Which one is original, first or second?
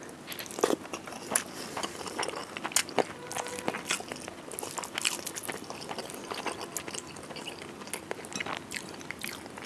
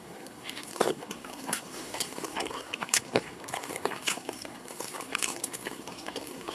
first